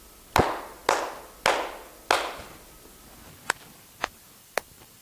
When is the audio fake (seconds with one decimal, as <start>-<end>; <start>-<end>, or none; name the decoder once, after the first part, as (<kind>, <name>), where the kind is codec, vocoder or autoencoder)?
4.4-5.0 (vocoder, BigVGAN v2)